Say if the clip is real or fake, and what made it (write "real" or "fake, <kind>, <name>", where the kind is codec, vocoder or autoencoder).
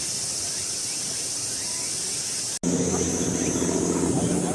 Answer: real